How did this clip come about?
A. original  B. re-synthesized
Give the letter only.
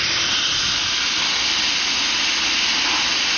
A